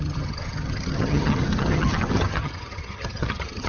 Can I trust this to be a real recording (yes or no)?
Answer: no